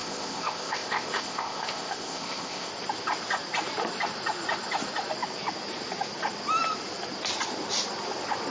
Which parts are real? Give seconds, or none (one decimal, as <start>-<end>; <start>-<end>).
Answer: 2.7-8.5